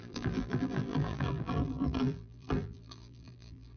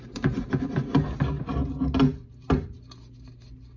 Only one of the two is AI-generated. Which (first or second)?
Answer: first